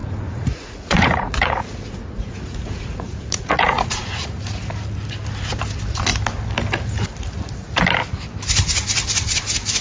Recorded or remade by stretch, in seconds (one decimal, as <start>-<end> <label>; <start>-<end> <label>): 0.0-4.4 remade; 4.4-9.8 recorded